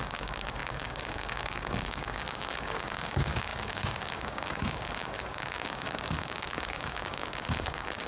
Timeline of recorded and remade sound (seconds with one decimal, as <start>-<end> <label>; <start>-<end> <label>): 0.0-8.1 remade

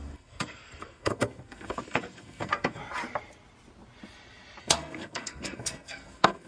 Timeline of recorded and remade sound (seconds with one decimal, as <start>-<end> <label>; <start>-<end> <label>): 0.0-2.8 remade; 2.8-4.6 recorded; 4.6-6.5 remade

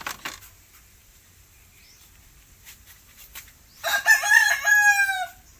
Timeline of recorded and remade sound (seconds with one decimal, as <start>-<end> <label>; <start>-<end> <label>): 0.0-1.0 recorded; 1.0-4.4 remade; 4.4-5.6 recorded

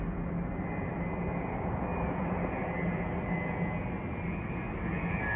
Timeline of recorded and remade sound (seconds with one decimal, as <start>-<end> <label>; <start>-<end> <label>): 0.0-5.4 recorded